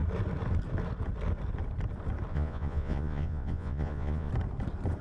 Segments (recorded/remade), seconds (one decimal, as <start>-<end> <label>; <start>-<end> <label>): 0.0-2.3 recorded; 2.3-4.3 remade; 4.3-5.0 recorded